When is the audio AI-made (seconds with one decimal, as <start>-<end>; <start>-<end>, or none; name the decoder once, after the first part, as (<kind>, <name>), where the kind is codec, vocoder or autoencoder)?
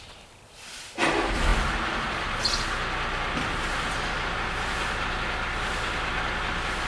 none